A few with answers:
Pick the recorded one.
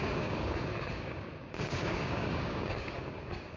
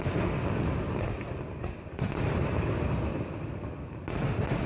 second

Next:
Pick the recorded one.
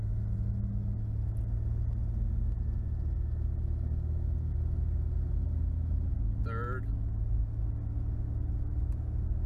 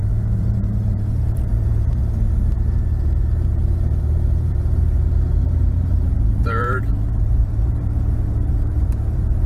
first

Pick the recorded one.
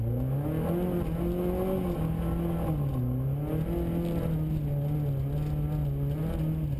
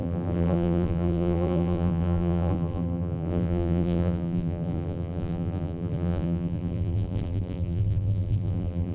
first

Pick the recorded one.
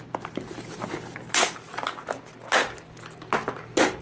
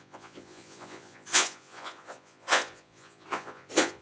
first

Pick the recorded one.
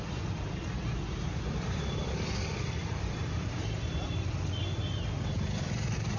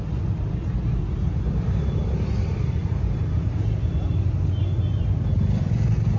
second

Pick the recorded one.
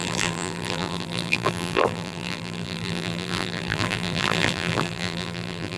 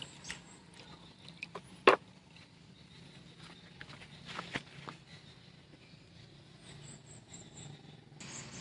second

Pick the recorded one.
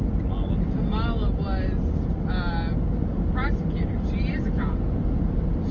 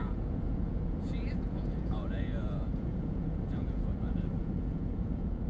first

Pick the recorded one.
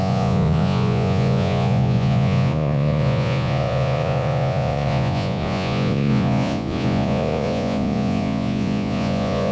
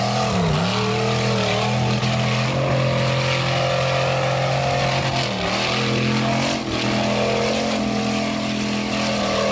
second